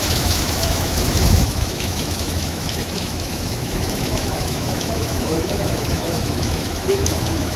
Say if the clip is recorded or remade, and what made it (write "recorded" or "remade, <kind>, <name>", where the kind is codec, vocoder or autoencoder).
remade, autoencoder, DAC-VAE